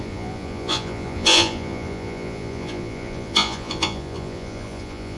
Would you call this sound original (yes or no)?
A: no